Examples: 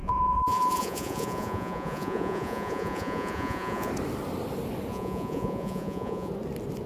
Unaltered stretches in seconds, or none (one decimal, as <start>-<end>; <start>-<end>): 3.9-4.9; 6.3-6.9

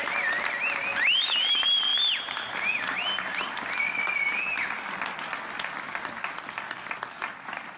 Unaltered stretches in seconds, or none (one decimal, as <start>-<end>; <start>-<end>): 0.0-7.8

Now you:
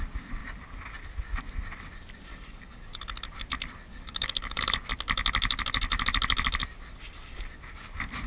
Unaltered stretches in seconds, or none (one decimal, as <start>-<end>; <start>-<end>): 0.0-2.3; 3.0-3.9; 4.6-8.3

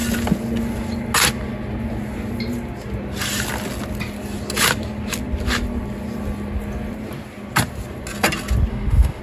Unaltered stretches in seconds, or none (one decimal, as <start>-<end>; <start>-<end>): 0.0-8.7